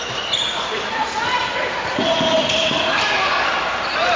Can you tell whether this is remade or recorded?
recorded